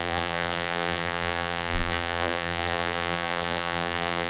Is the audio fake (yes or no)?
yes